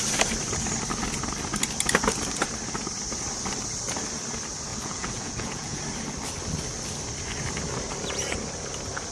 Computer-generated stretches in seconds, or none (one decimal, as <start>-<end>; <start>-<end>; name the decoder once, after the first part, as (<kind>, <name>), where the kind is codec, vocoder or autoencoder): 4.7-5.8 (vocoder, Vocos)

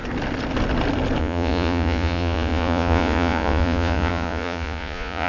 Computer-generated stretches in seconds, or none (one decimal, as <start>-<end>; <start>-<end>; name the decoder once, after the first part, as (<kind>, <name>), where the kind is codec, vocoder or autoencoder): 1.2-5.3 (vocoder, Vocos)

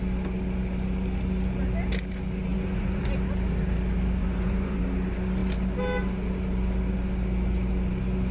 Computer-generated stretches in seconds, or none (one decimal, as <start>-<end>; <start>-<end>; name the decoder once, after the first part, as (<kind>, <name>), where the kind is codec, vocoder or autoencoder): 2.5-3.1 (vocoder, Vocos); 4.2-4.8

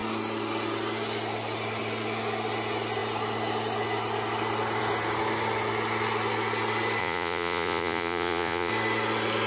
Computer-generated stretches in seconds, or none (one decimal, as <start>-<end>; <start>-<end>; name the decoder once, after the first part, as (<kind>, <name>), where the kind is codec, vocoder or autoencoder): 7.0-8.7 (vocoder, Vocos)

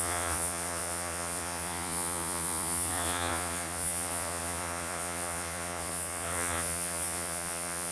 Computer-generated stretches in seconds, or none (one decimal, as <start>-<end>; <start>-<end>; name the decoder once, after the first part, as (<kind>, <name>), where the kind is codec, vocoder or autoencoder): 0.0-7.9 (vocoder, Vocos)

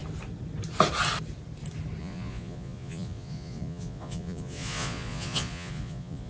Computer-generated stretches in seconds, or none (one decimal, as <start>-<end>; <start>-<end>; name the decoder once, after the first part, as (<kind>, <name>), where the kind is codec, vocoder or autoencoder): 2.0-6.3 (vocoder, Vocos)

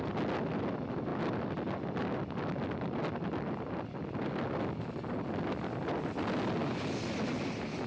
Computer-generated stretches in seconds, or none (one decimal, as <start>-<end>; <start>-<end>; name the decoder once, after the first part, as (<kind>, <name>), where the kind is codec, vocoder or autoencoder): none

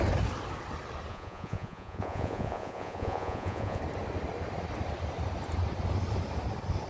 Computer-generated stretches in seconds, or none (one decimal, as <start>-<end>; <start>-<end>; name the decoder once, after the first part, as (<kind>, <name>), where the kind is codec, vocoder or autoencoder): 1.1-3.8 (vocoder, Vocos)